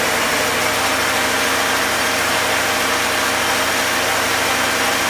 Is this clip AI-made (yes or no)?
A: no